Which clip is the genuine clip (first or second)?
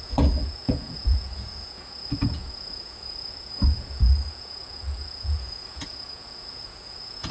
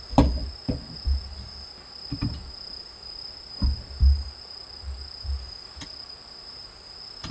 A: second